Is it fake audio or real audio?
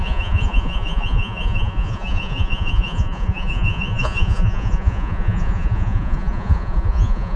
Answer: fake